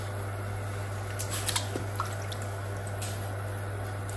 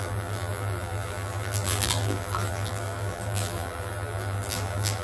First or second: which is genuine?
first